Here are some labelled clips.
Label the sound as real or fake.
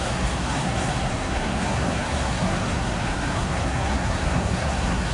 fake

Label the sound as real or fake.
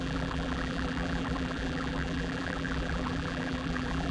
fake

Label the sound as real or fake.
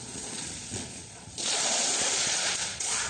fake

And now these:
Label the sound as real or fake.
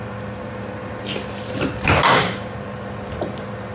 real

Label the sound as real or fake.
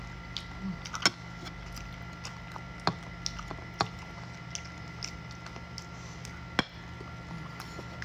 real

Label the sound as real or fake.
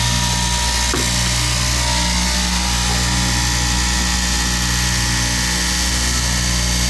real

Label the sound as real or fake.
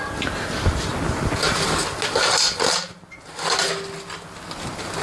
real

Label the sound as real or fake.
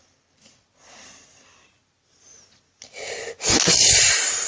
real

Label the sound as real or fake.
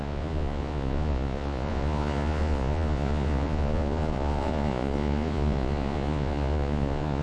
fake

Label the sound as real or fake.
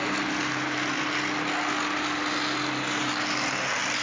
real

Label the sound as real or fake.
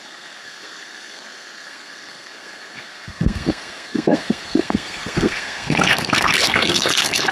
fake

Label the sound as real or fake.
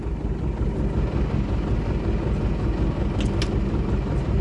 real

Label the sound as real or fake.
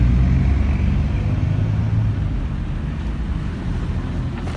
real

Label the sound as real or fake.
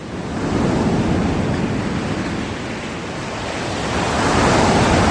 real